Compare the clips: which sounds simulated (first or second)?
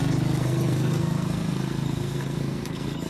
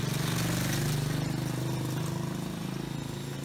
first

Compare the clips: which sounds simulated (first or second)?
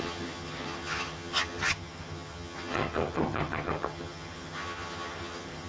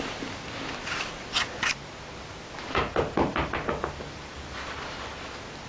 first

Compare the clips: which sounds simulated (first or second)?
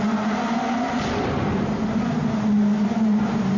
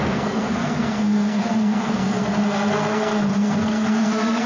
second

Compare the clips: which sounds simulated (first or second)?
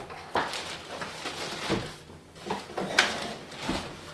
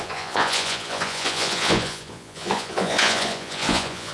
second